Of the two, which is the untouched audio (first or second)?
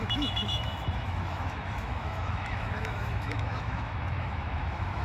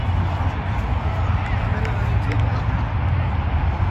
second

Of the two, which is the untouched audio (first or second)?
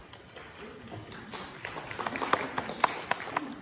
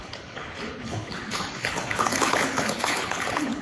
first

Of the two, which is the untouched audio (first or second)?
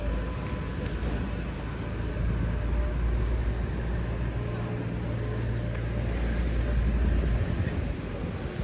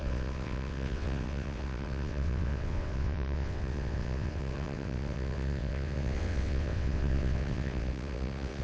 first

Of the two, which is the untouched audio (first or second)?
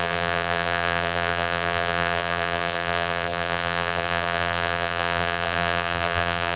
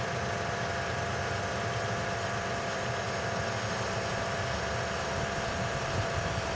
second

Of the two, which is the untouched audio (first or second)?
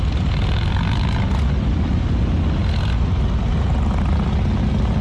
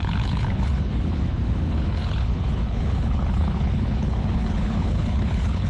first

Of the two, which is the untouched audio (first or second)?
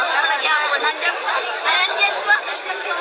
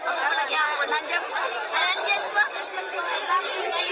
second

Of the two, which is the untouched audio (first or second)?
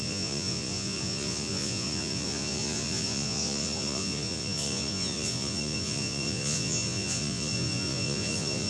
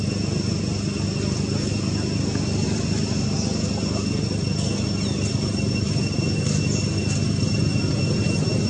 second